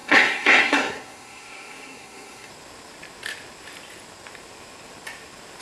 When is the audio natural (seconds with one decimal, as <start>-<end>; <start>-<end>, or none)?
2.5-5.6